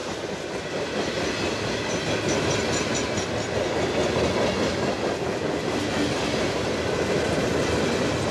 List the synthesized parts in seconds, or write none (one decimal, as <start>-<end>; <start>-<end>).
none